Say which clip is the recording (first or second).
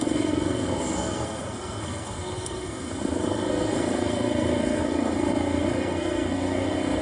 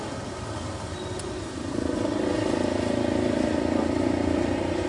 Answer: second